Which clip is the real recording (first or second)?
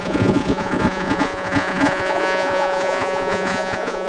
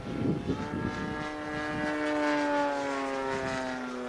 second